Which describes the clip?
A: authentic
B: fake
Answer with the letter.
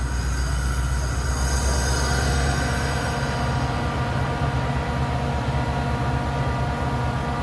A